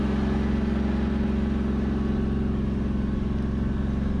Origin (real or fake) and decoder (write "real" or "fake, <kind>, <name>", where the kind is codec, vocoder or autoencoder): real